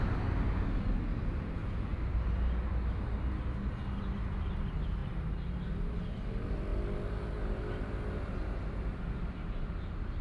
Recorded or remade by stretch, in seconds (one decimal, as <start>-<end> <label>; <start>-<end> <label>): 0.0-5.0 recorded; 5.0-5.5 remade; 5.5-10.2 recorded